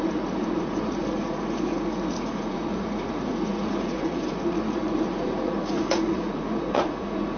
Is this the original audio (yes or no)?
no